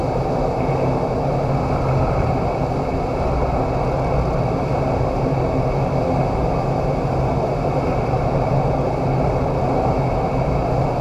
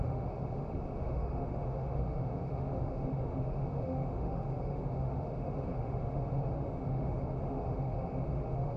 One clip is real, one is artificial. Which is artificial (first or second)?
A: second